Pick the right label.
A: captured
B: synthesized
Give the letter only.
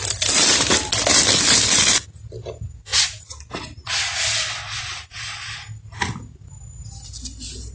A